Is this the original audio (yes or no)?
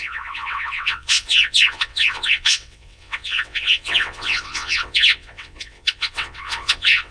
no